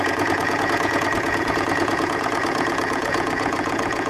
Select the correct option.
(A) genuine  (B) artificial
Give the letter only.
B